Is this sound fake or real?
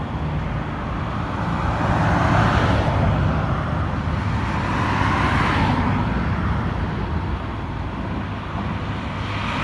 real